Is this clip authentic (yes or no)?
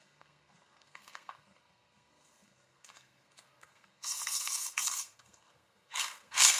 no